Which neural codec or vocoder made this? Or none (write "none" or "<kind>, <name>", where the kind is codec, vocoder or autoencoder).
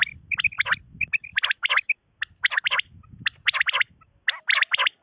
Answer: none